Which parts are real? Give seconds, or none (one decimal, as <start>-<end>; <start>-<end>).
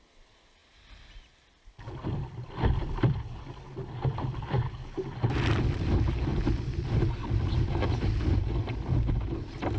0.0-0.6; 3.2-9.8